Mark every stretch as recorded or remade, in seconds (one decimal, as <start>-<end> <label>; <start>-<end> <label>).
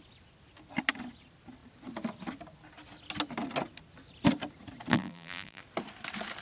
0.0-4.9 recorded; 4.9-5.6 remade; 5.6-6.4 recorded